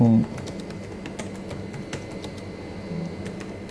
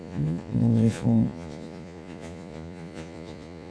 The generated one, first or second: second